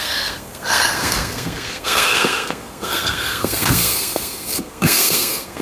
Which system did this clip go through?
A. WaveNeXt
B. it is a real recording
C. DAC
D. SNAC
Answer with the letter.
D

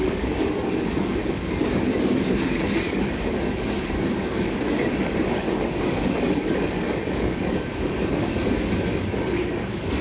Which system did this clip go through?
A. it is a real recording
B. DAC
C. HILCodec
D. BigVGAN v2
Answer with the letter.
B